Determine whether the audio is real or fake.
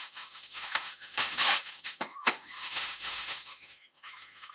fake